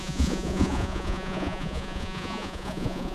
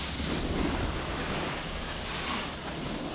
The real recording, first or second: second